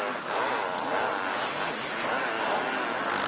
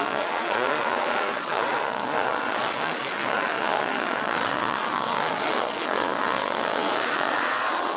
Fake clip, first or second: second